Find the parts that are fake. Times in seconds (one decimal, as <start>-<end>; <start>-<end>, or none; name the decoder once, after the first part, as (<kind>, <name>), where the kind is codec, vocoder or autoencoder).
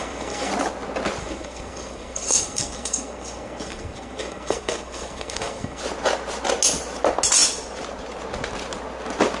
0.0-0.5 (codec, SNAC); 1.2-5.8